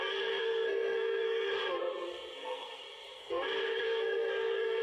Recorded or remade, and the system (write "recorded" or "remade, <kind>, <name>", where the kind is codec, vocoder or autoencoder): remade, codec, SNAC